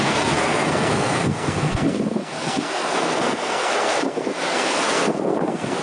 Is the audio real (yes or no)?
no